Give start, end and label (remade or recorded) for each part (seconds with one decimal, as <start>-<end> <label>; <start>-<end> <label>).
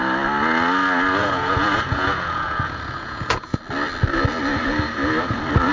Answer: 0.0-1.2 recorded; 1.2-3.6 remade; 3.6-5.7 recorded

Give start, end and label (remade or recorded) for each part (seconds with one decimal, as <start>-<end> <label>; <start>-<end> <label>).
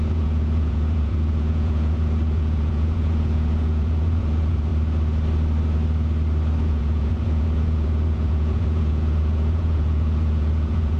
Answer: 0.0-4.7 remade; 4.7-6.6 recorded; 6.6-11.0 remade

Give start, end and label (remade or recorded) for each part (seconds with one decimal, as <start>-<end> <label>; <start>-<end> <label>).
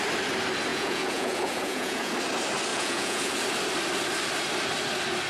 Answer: 0.0-0.7 recorded; 0.7-2.1 remade; 2.1-2.7 recorded; 2.7-3.3 remade; 3.3-5.3 recorded